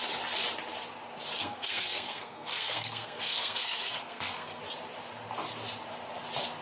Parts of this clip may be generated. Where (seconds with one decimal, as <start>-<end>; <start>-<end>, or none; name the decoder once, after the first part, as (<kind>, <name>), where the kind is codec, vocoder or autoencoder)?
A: 1.4-4.6 (codec, SNAC)